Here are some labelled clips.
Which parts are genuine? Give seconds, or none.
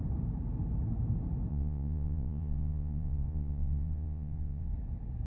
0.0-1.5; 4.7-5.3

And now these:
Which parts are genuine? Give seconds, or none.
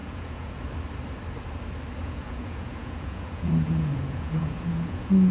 0.6-2.0